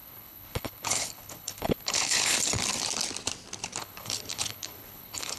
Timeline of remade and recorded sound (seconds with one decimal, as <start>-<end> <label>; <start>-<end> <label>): 0.0-2.4 remade; 2.4-3.8 recorded; 3.8-5.4 remade